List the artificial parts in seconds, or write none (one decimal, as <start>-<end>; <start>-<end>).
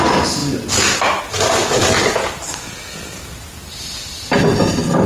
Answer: none